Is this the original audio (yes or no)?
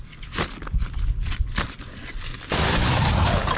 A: yes